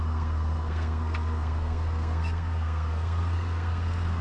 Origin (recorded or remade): remade